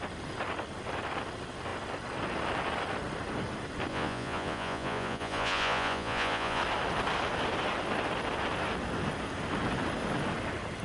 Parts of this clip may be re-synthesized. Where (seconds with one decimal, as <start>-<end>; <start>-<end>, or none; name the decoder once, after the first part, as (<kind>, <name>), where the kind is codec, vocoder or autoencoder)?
3.9-6.6 (vocoder, Vocos)